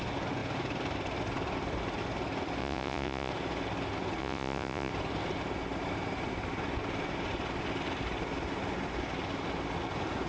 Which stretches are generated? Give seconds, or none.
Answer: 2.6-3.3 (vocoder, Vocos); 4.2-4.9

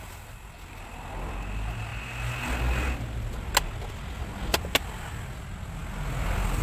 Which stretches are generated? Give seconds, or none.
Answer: none

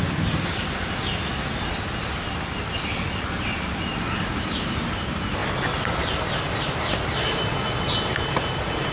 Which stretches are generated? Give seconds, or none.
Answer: none

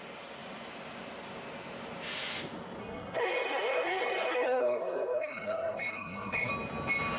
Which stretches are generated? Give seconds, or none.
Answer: 2.8-6.5 (codec, SNAC)

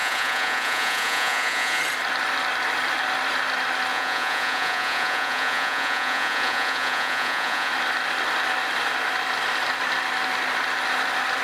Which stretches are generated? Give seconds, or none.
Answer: 0.0-1.8 (vocoder, Vocos); 3.9-7.7

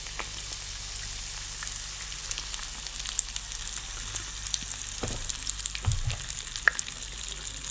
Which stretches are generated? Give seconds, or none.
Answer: none

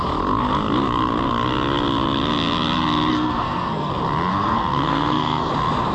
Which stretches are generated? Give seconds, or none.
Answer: 3.1-3.9 (codec, SNAC); 4.3-5.5